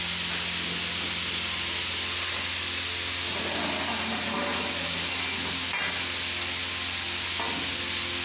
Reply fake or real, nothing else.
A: real